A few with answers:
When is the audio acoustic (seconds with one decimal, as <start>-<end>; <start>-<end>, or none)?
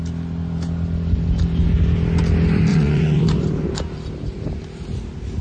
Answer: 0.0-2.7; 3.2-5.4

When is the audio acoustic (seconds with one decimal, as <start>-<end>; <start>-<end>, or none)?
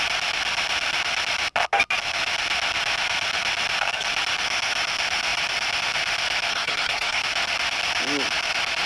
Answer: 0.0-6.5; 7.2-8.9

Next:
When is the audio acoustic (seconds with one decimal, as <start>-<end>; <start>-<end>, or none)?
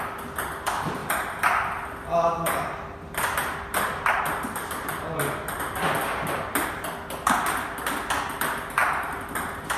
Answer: 0.0-9.8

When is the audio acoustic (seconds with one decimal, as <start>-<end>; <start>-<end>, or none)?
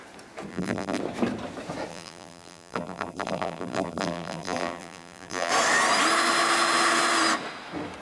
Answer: 0.0-0.5; 1.0-1.9; 5.5-8.0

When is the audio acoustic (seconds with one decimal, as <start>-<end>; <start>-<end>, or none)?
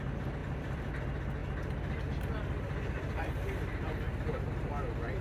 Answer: 0.0-0.4; 0.9-1.4; 4.5-5.2